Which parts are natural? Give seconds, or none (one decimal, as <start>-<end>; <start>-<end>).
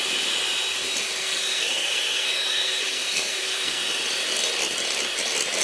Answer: 0.0-1.2; 3.8-5.6